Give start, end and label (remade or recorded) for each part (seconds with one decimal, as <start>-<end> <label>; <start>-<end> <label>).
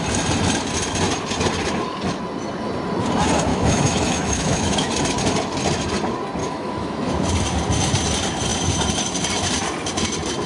0.0-3.5 recorded; 3.5-4.9 remade; 4.9-6.4 recorded; 6.4-7.1 remade; 7.1-10.5 recorded